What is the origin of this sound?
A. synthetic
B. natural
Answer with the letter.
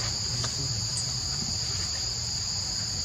B